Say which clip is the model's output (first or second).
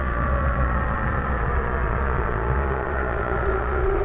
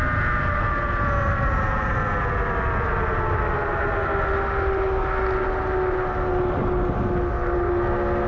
first